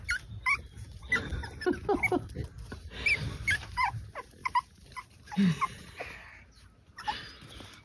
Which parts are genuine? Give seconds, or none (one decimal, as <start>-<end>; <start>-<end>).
0.0-7.8